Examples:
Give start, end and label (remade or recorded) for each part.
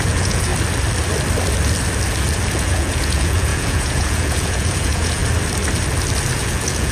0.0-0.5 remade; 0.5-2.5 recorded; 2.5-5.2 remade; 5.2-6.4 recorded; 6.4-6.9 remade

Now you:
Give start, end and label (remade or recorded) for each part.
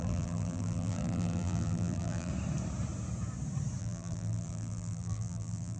0.0-2.3 remade; 2.3-3.8 recorded; 3.8-5.8 remade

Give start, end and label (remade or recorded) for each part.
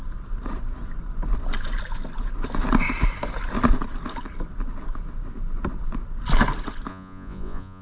0.0-6.9 recorded; 6.9-7.8 remade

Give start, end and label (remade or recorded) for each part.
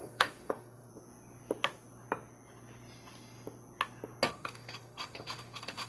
0.0-0.9 remade; 0.9-4.3 recorded; 4.3-5.9 remade